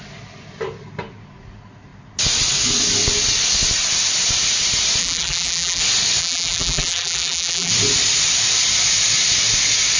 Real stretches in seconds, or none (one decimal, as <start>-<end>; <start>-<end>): 0.0-5.0; 5.8-6.2; 7.7-10.0